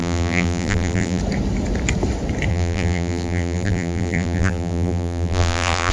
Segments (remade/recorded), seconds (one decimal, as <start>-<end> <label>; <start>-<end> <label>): 0.0-1.2 remade; 1.2-2.5 recorded; 2.5-5.9 remade